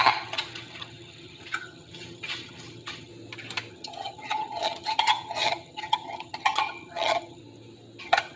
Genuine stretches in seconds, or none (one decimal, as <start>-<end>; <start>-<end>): 3.1-3.7; 7.4-8.0